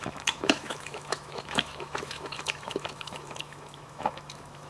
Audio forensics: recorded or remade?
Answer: remade